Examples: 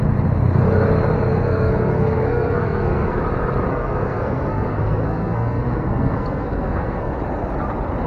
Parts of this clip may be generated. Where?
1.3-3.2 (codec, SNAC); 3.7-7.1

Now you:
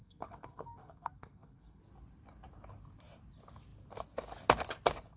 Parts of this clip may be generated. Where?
0.0-1.8 (codec, SNAC)

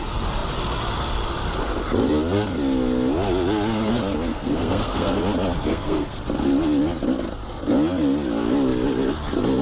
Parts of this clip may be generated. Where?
4.3-5.2 (codec, SNAC); 5.7-6.2

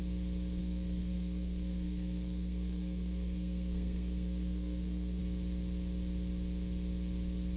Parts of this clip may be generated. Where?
0.6-5.2 (codec, SNAC)

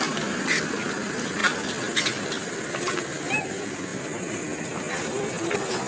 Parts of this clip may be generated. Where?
none

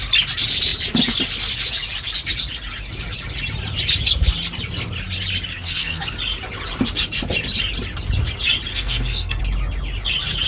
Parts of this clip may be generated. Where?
5.5-6.1 (codec, SNAC); 8.7-9.4

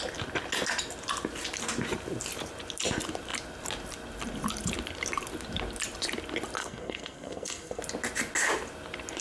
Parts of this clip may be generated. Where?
6.6-7.8 (codec, SNAC)

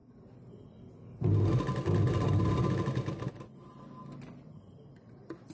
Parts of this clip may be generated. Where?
none